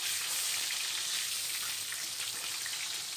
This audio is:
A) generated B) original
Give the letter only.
B